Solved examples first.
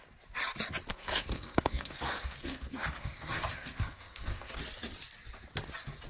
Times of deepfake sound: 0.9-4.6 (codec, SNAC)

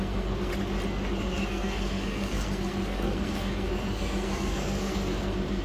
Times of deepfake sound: 0.0-0.5 (codec, SNAC); 1.2-5.6